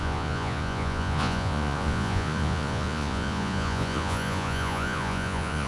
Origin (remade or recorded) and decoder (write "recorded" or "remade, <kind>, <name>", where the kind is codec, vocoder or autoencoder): remade, vocoder, Vocos